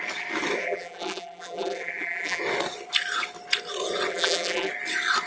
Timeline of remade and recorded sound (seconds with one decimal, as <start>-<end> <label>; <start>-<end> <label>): 0.0-0.6 recorded; 0.6-2.4 remade; 2.4-4.1 recorded; 4.1-4.7 remade; 4.7-5.3 recorded